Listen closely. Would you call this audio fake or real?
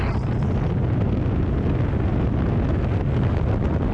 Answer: real